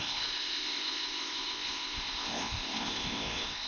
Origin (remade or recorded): remade